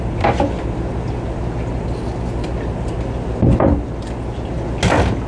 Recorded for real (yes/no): yes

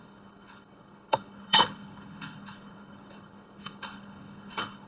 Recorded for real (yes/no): no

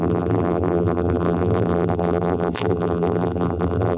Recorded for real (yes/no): no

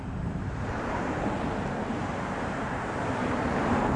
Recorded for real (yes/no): no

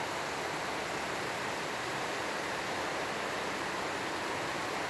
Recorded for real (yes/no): yes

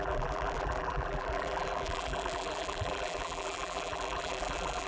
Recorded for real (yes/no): no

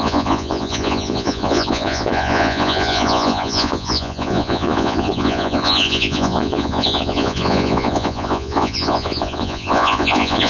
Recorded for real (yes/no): no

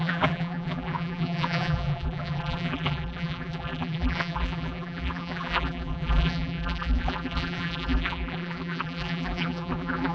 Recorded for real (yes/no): no